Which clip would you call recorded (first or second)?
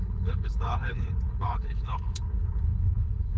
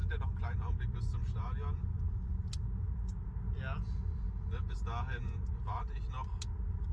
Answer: second